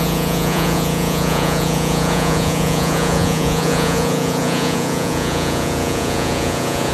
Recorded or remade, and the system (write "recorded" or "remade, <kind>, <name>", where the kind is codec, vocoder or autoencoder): remade, vocoder, Vocos